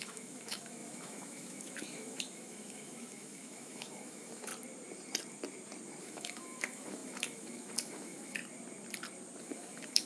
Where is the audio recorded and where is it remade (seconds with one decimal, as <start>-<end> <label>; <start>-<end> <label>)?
0.0-4.5 remade; 4.5-6.0 recorded; 6.0-8.4 remade; 8.4-9.4 recorded; 9.4-10.1 remade